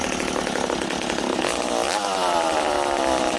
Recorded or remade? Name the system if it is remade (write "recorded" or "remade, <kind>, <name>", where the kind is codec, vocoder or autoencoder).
recorded